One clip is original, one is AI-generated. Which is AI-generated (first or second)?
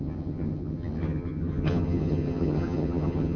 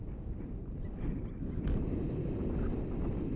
first